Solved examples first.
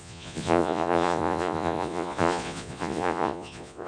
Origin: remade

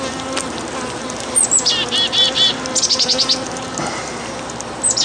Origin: recorded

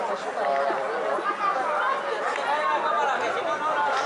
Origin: recorded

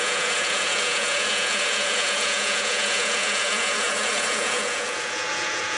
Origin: remade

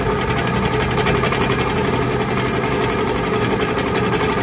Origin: recorded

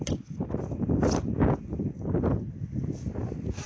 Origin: recorded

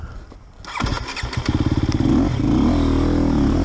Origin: recorded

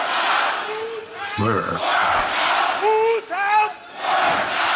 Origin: recorded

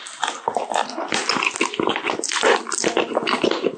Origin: recorded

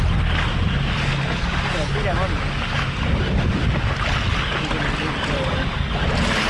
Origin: recorded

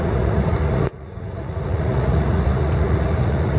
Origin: remade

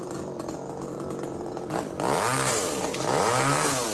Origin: recorded